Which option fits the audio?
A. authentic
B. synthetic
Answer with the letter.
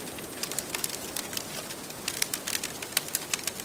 A